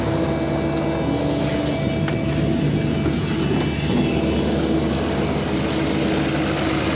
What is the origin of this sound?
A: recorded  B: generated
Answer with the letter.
A